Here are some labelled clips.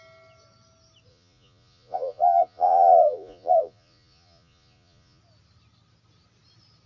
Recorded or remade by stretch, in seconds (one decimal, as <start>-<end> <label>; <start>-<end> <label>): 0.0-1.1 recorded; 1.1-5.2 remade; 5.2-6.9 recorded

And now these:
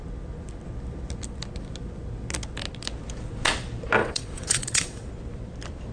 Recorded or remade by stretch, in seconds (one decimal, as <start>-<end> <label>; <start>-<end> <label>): 0.0-4.0 recorded; 4.0-5.1 remade; 5.1-5.9 recorded

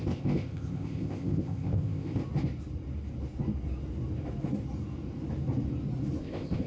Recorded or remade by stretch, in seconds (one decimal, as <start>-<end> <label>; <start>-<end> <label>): 0.0-2.2 remade; 2.2-6.2 recorded; 6.2-6.7 remade